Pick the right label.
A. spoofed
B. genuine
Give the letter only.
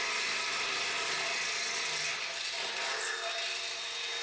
B